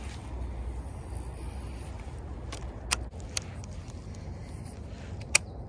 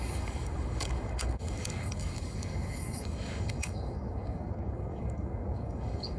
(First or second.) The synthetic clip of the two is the second